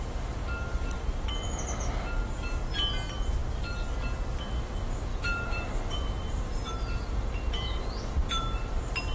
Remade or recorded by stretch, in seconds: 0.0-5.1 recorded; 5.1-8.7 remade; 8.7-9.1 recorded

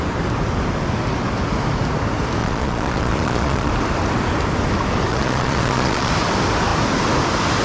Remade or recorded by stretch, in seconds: 0.0-2.4 recorded; 2.4-3.7 remade; 3.7-5.1 recorded; 5.1-6.1 remade; 6.1-7.6 recorded

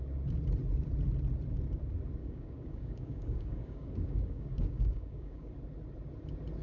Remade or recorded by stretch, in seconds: 0.0-2.2 recorded; 2.2-5.5 remade; 5.5-6.6 recorded

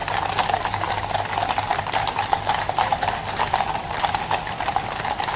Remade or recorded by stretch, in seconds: 0.0-1.7 recorded; 1.7-4.9 remade; 4.9-5.4 recorded